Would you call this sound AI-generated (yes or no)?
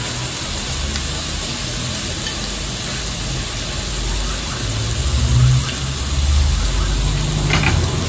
no